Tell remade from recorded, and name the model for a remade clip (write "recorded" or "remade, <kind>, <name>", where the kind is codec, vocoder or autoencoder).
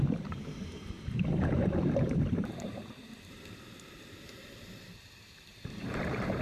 remade, vocoder, BigVGAN v2